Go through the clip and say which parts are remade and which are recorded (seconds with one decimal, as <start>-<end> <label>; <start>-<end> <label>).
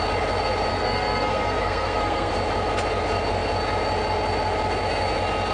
0.0-0.7 recorded; 0.7-2.3 remade; 2.3-5.5 recorded